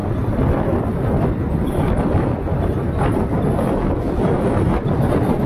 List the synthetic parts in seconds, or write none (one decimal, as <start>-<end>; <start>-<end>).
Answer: 0.0-3.3